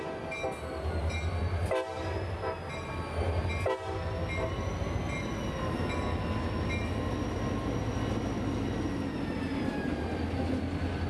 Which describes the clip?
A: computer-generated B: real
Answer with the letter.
B